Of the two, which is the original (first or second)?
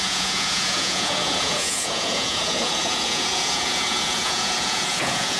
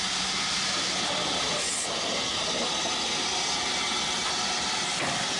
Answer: second